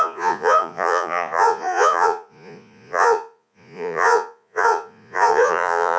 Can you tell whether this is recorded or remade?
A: remade